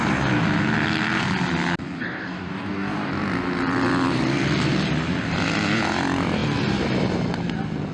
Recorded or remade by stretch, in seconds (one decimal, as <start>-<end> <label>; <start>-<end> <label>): 0.0-2.0 recorded; 2.0-3.1 remade; 3.1-7.9 recorded

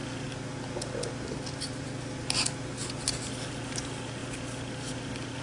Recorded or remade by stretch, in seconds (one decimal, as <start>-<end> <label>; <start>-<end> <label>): 0.0-5.4 recorded

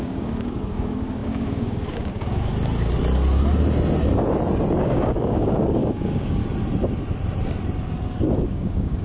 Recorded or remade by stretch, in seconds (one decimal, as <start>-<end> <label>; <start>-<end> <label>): 0.0-2.5 remade; 2.5-4.8 recorded; 4.8-6.4 remade; 6.4-8.4 recorded; 8.4-9.0 remade

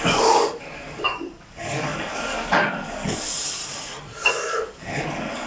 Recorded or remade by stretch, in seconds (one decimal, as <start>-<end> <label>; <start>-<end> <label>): 0.0-3.6 remade; 3.6-4.3 recorded; 4.3-5.5 remade